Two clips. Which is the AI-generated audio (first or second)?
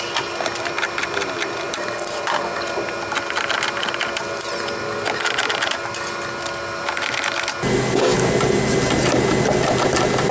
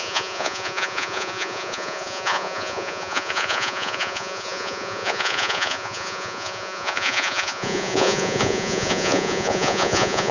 second